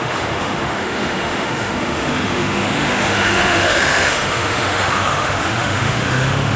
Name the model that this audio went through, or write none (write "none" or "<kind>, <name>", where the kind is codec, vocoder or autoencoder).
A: autoencoder, DAC-VAE